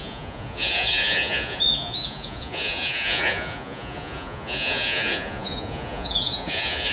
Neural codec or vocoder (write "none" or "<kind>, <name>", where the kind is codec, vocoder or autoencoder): vocoder, Vocos